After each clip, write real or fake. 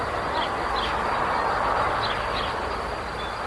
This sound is real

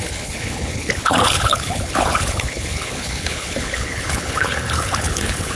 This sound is fake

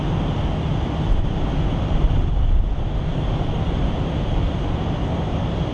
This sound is real